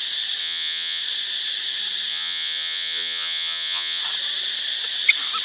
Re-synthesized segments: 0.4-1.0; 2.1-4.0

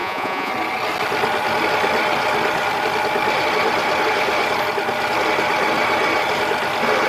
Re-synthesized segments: 0.0-0.5

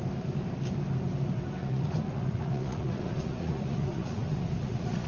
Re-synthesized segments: 1.6-5.1

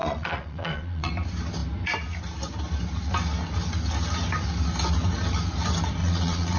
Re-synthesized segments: 0.0-1.1; 6.0-6.6

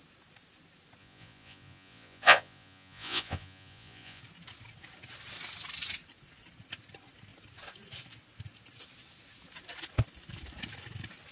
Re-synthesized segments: 1.0-4.2

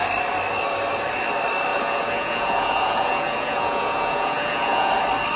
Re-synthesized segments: 1.7-4.9